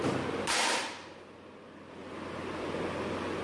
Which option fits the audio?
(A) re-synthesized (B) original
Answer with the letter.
B